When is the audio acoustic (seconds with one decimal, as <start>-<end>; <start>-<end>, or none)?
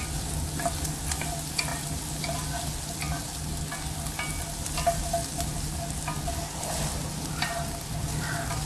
0.0-8.7